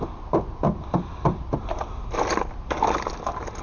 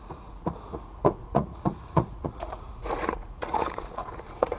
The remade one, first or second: second